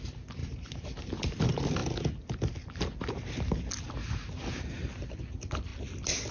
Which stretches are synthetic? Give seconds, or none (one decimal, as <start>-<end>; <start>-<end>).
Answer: none

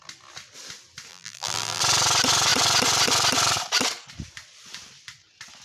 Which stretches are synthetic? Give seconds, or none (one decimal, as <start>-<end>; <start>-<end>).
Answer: 1.1-1.8

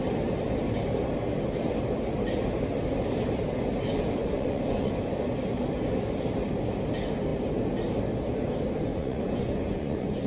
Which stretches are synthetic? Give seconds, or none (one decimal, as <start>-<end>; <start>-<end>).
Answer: 4.2-4.9; 8.9-10.3

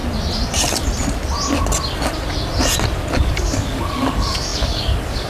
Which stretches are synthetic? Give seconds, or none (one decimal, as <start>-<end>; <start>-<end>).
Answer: 3.2-5.3

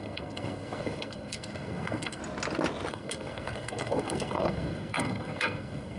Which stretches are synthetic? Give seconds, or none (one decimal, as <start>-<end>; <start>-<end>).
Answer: 0.0-2.2; 2.9-6.0

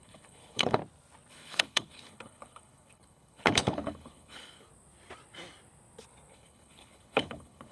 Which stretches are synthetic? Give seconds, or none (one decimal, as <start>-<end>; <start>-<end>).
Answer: 0.0-0.8; 1.3-4.7; 6.3-7.7

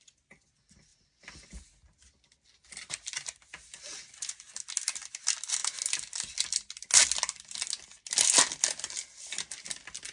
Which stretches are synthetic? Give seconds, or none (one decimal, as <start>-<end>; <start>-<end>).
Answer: none